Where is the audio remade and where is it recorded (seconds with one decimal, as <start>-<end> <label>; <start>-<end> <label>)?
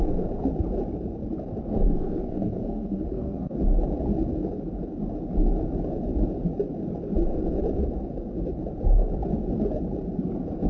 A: 0.0-1.7 recorded; 1.7-3.5 remade; 3.5-10.7 recorded